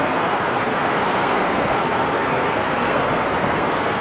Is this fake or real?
fake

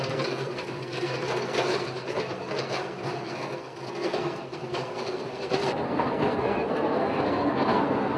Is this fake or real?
fake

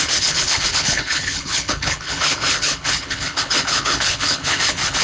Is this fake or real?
fake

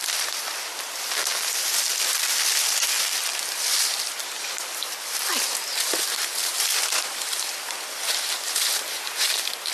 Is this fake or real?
fake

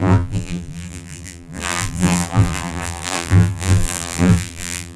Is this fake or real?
fake